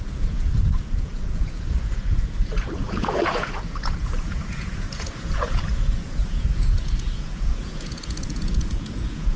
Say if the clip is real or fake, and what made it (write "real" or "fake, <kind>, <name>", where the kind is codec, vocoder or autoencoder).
fake, vocoder, Vocos